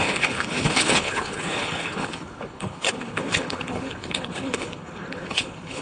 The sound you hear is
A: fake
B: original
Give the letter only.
A